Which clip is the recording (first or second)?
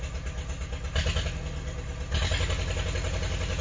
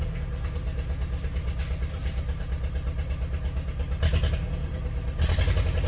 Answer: first